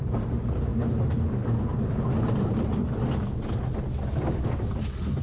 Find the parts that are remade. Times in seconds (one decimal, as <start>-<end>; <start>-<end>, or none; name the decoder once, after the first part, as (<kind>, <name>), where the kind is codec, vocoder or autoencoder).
none